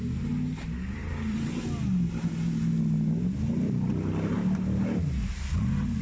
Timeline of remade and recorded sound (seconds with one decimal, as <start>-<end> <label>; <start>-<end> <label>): 0.0-1.0 recorded; 1.0-1.5 remade; 1.5-6.0 recorded

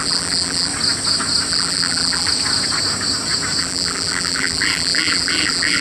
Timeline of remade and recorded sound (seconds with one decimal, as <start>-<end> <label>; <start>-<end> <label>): 0.0-0.7 remade; 0.7-1.5 recorded; 1.5-2.3 remade; 2.3-3.6 recorded; 3.6-5.8 remade

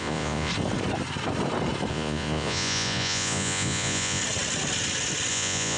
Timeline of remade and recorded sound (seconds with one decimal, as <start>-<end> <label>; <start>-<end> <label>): 0.0-0.5 remade; 0.5-1.9 recorded; 1.9-4.2 remade; 4.2-5.3 recorded; 5.3-5.8 remade